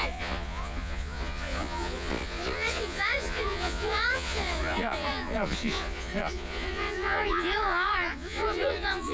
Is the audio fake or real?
fake